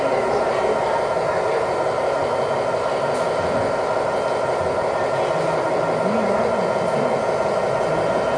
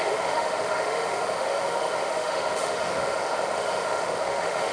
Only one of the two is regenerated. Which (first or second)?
second